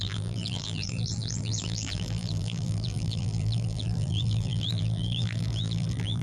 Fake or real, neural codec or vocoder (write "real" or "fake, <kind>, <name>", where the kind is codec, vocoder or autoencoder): fake, vocoder, BigVGAN v2